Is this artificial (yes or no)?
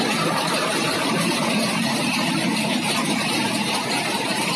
yes